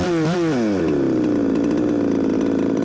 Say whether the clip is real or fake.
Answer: real